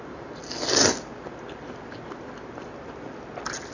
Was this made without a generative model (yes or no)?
yes